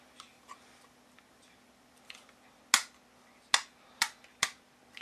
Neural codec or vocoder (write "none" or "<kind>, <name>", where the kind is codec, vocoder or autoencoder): none